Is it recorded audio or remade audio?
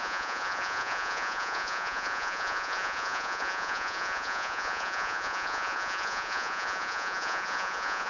remade